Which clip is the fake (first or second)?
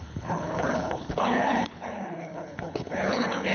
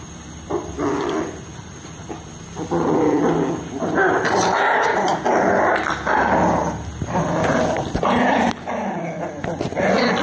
first